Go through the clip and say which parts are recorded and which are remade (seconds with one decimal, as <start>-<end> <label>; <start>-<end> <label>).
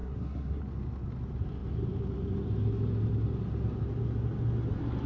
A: 0.0-0.6 remade; 0.6-5.1 recorded